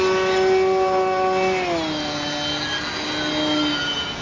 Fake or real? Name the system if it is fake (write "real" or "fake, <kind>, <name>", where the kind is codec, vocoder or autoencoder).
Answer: real